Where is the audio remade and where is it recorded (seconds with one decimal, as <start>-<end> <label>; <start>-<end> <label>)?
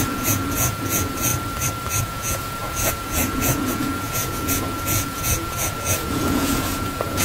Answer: 0.0-1.3 remade; 1.3-2.0 recorded; 2.0-7.2 remade